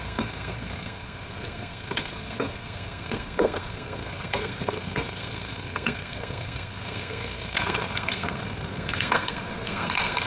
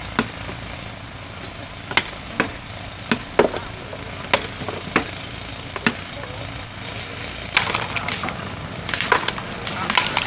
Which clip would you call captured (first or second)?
second